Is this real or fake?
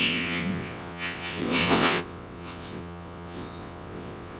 fake